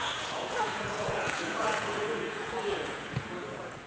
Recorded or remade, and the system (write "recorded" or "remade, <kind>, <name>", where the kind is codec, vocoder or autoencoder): remade, vocoder, Vocos